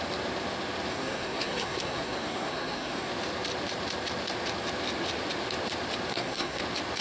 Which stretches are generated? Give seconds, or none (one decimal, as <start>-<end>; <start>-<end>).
0.9-3.1; 6.1-6.6